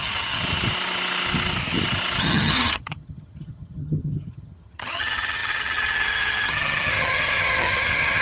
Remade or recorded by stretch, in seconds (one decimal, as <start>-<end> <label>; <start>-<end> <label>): 0.0-0.4 remade; 0.4-2.2 recorded; 2.2-8.2 remade